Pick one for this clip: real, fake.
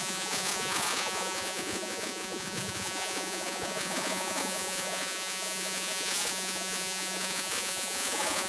fake